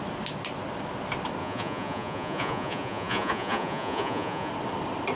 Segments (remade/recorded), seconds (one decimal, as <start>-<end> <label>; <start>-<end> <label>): 0.0-1.4 recorded; 1.4-4.5 remade; 4.5-5.2 recorded